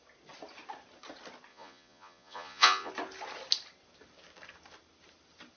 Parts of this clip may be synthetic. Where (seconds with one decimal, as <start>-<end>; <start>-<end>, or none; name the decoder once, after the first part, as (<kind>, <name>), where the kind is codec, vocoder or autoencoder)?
1.5-2.9 (vocoder, Vocos)